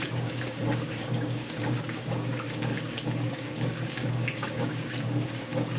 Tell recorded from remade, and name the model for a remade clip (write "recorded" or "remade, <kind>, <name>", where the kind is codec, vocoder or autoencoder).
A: remade, codec, DAC